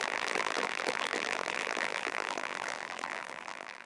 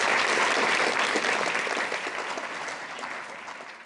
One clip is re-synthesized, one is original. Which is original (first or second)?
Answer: second